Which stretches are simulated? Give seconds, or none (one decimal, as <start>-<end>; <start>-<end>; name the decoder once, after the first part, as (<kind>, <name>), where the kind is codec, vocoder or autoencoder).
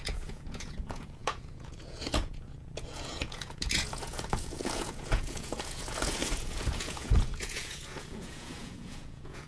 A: 0.0-9.5 (vocoder, Vocos)